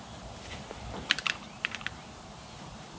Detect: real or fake fake